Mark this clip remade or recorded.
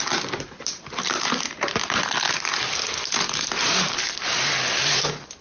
recorded